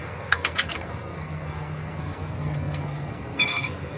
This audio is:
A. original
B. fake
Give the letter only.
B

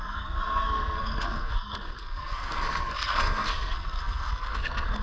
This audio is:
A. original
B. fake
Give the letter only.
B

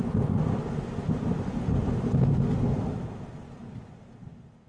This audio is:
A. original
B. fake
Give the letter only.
A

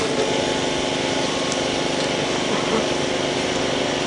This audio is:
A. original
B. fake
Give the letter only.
A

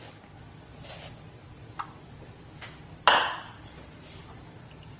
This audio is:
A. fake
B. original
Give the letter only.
B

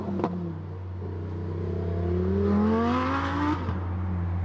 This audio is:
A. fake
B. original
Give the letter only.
B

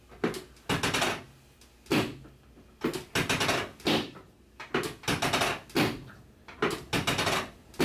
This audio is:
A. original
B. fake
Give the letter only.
A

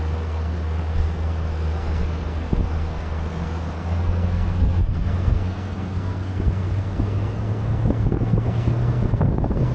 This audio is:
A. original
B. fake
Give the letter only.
B